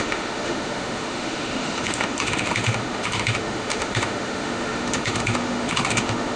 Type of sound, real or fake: fake